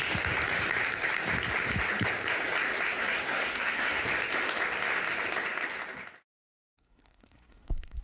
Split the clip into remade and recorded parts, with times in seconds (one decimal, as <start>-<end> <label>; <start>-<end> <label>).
0.0-3.0 recorded; 3.0-4.0 remade; 4.0-6.7 recorded; 6.7-8.0 remade